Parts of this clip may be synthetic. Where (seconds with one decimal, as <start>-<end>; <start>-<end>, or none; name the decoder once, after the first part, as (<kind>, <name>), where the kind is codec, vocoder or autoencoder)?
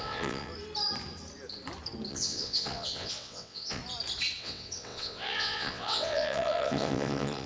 0.0-0.5 (vocoder, WaveNeXt); 2.1-3.8; 4.4-7.5